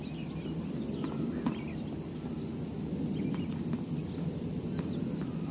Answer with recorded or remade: recorded